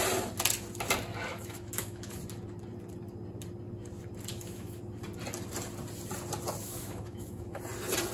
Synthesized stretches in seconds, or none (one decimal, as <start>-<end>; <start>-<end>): 1.3-2.2; 4.3-4.8; 6.6-7.6